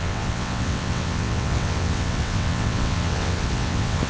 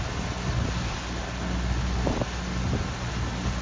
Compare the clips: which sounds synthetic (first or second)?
first